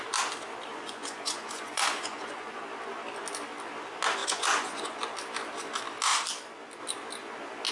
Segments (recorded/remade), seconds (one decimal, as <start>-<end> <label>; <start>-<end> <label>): 0.0-0.7 recorded; 0.7-2.6 remade; 2.6-4.2 recorded; 4.2-5.0 remade; 5.0-7.7 recorded